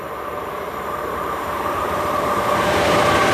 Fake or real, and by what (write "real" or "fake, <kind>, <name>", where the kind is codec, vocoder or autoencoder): fake, vocoder, BigVGAN v2